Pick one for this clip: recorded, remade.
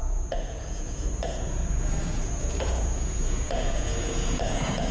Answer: remade